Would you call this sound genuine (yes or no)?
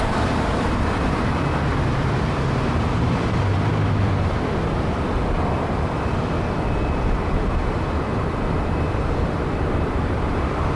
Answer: no